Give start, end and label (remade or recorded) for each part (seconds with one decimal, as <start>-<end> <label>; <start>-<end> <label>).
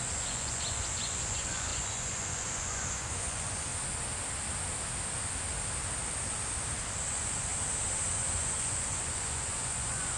0.0-3.7 remade; 3.7-7.1 recorded; 7.1-7.5 remade; 7.5-8.1 recorded; 8.1-10.2 remade